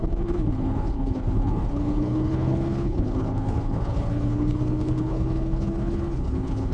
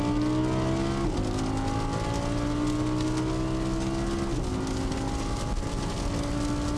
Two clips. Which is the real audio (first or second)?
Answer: second